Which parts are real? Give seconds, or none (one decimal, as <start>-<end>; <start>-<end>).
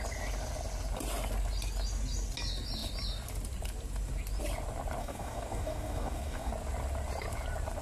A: 0.0-5.0; 6.5-7.8